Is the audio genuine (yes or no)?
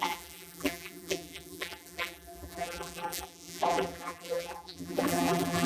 no